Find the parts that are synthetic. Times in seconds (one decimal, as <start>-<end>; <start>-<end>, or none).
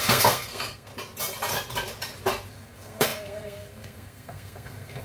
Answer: 0.0-0.9; 2.5-5.0